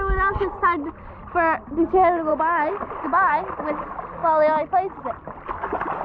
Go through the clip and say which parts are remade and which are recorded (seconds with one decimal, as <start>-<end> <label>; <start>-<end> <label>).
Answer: 0.0-6.0 recorded